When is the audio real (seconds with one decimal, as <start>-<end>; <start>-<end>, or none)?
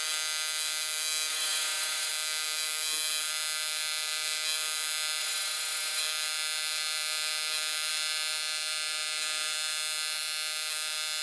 0.0-1.3; 2.1-5.2; 6.0-11.2